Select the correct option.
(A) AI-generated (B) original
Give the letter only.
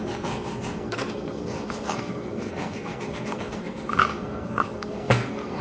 A